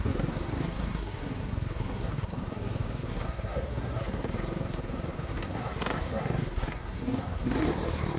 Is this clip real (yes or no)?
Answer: no